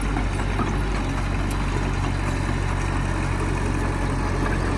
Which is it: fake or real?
real